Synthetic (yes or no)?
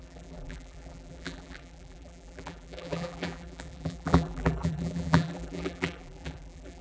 yes